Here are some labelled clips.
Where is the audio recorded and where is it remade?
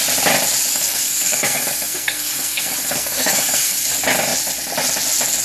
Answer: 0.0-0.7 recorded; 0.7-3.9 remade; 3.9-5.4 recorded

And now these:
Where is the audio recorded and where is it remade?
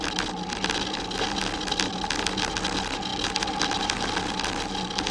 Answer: 0.0-5.1 recorded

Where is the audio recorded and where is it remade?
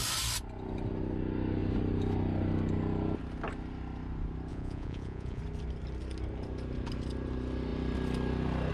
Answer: 0.0-4.5 recorded; 4.5-5.4 remade; 5.4-8.7 recorded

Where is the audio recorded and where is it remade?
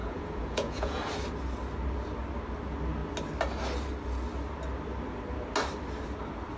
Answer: 0.0-1.1 remade; 1.1-6.6 recorded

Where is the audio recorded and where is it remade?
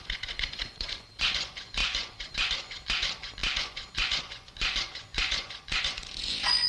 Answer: 0.0-6.7 remade